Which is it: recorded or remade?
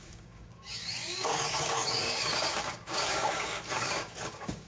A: remade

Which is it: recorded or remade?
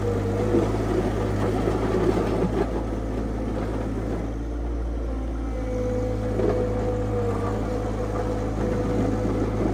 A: recorded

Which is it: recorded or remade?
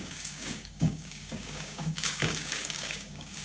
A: remade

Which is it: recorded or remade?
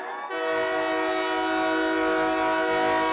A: recorded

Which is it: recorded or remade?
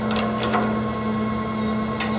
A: recorded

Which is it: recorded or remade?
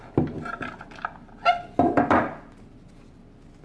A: recorded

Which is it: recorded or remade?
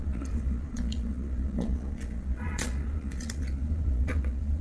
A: remade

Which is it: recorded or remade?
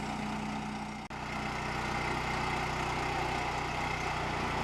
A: recorded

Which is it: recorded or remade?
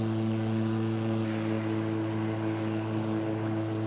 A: recorded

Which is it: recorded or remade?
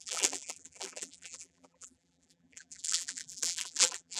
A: remade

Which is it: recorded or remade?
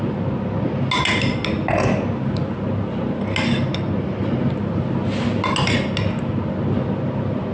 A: recorded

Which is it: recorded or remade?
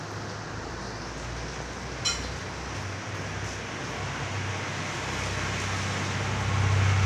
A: recorded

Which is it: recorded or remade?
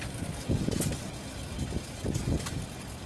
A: recorded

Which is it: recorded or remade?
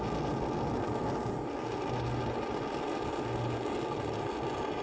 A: recorded